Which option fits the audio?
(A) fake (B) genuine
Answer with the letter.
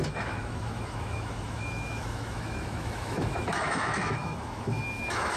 A